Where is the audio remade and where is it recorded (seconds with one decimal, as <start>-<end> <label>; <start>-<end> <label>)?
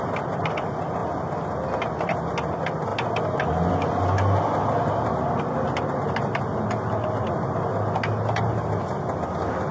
0.0-9.7 recorded